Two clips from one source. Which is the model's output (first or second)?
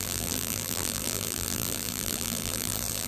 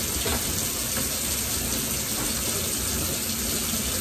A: first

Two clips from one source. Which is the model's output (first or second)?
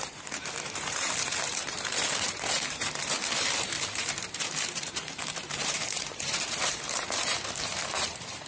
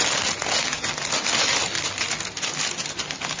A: first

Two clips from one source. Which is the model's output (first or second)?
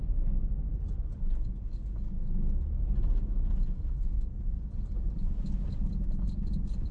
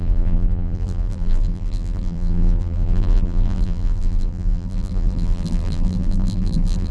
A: second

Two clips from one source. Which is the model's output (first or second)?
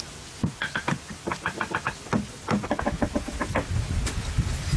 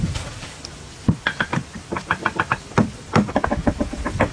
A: second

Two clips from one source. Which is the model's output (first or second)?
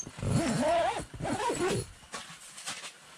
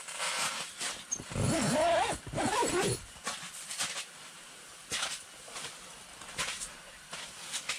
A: second